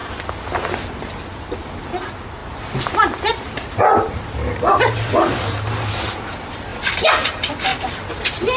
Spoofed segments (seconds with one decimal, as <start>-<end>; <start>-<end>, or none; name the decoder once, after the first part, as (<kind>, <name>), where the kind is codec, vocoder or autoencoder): none